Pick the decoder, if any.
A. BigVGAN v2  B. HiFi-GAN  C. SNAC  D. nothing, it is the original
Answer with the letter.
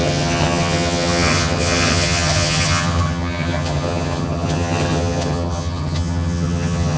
B